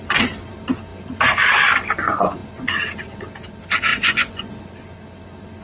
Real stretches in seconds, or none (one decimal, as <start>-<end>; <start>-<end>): 0.0-3.9; 4.5-5.6